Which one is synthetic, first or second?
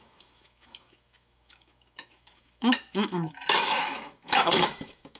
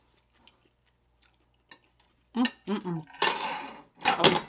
first